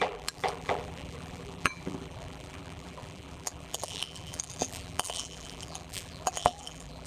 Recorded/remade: remade